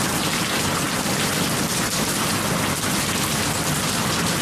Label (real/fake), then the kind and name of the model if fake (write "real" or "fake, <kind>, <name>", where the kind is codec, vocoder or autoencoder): real